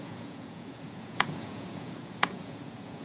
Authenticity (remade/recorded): remade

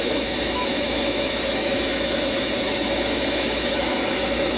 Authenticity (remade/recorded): remade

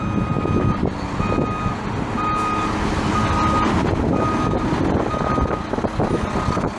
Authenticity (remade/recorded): recorded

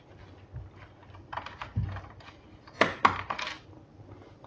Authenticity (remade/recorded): recorded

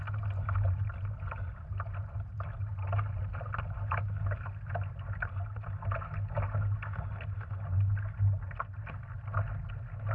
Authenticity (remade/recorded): recorded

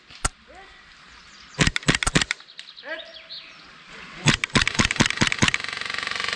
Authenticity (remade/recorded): recorded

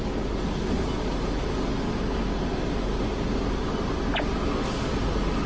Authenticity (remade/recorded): recorded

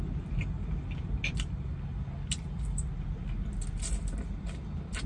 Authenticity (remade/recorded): recorded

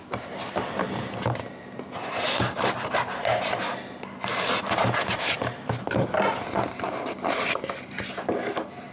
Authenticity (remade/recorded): recorded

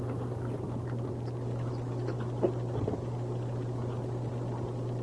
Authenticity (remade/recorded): recorded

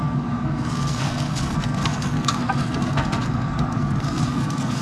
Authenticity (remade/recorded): remade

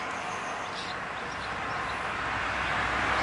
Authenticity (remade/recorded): recorded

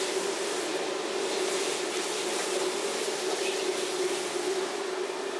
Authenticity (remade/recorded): recorded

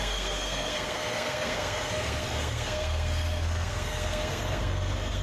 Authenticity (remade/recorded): remade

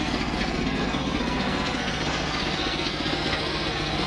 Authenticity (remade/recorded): remade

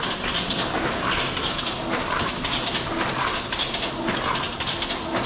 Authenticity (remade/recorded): recorded